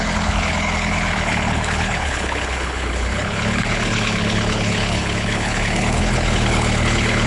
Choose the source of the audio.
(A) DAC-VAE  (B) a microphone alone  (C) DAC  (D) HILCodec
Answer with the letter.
D